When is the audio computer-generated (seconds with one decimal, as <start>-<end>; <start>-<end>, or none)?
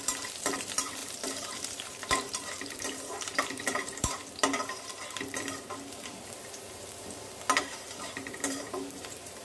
0.0-4.2; 7.6-9.4